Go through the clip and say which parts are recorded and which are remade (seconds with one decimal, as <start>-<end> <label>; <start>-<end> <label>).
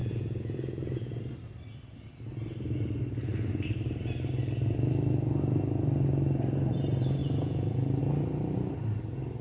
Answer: 0.0-1.2 remade; 1.2-7.2 recorded; 7.2-8.0 remade; 8.0-9.4 recorded